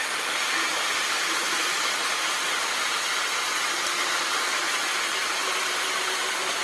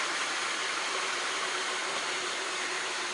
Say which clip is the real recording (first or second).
first